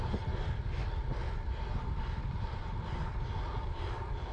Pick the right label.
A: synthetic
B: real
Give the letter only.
B